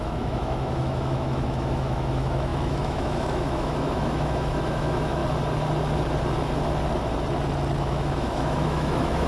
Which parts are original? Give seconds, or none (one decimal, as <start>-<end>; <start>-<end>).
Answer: 5.2-7.8